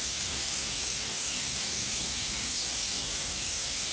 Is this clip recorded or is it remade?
remade